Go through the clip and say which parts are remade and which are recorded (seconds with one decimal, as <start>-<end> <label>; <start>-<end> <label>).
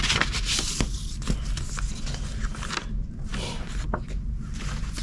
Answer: 0.0-5.0 recorded